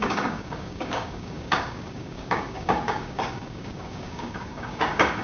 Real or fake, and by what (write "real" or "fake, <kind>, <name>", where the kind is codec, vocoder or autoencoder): fake, codec, DAC